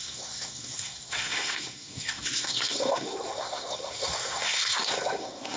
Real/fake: fake